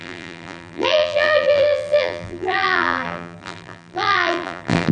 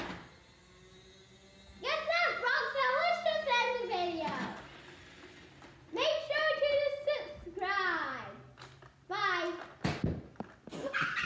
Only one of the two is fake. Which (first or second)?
first